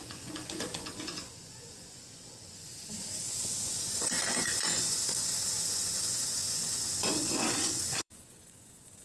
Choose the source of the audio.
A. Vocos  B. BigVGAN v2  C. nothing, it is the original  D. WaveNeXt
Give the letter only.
A